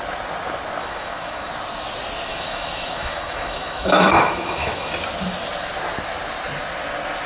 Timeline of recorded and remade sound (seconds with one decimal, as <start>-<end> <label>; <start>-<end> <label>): 0.0-0.8 recorded; 0.8-1.5 remade; 1.5-2.3 recorded; 2.3-4.9 remade; 4.9-7.3 recorded